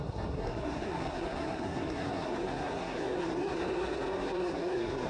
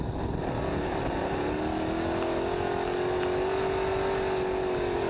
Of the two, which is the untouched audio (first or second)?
second